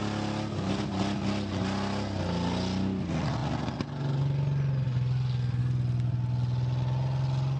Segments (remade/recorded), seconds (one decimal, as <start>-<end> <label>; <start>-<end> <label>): 0.0-7.6 recorded